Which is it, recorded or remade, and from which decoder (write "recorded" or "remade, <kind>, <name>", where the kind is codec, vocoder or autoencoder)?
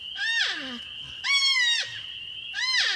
recorded